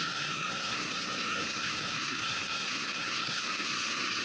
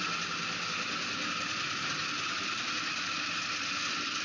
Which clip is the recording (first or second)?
second